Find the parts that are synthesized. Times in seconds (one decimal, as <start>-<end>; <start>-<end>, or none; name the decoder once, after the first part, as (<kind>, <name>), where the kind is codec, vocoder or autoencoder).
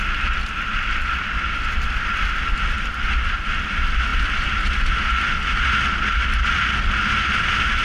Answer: none